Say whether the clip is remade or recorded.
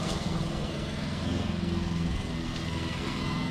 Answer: remade